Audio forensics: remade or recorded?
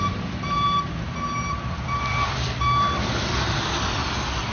remade